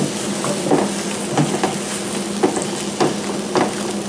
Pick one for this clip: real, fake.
real